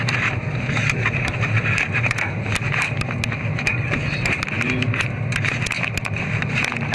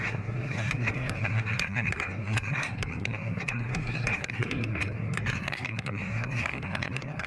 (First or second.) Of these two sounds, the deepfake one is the second